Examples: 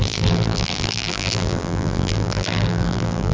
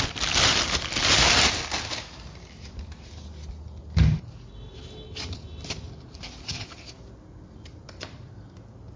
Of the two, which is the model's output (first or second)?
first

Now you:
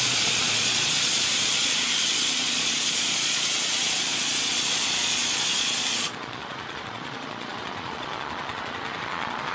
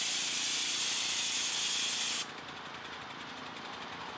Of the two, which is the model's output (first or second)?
first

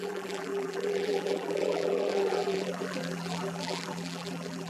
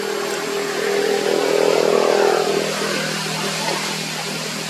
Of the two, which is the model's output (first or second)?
first